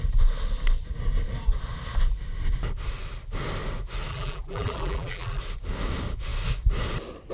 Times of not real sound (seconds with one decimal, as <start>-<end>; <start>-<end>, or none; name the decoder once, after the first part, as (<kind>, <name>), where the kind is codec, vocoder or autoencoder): 4.1-5.4 (vocoder, BigVGAN v2)